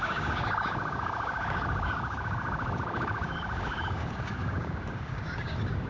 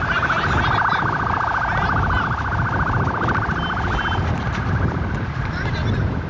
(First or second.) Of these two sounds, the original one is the second